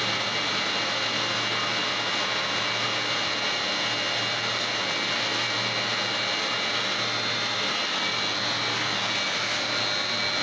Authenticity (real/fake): real